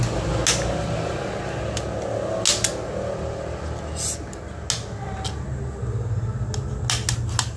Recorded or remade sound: recorded